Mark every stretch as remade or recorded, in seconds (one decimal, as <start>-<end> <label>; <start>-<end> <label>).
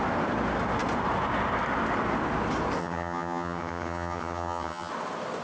0.0-2.8 recorded; 2.8-4.9 remade; 4.9-5.4 recorded